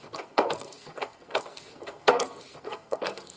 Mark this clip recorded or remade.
remade